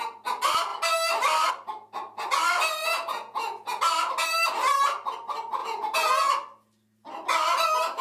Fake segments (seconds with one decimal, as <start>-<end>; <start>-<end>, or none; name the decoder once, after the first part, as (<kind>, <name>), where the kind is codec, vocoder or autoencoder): 2.8-3.8 (vocoder, Vocos); 5.6-6.3